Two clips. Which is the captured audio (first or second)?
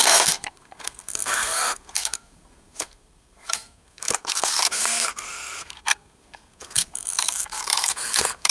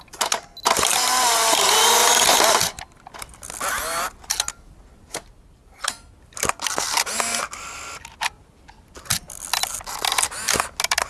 second